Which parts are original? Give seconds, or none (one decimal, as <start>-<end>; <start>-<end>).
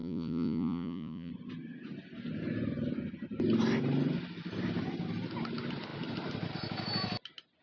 1.3-7.6